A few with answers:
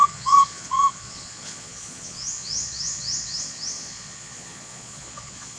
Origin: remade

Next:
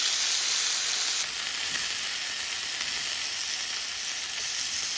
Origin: recorded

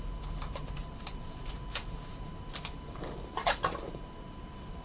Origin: remade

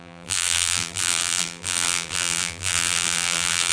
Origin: remade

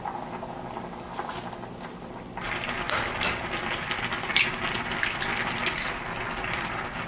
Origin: recorded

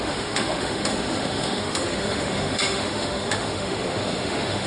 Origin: remade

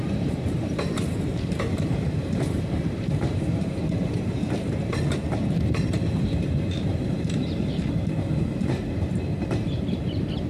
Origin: remade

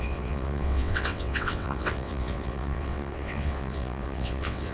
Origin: remade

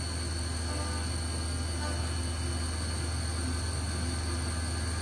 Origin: recorded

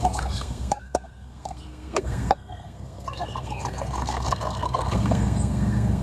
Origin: remade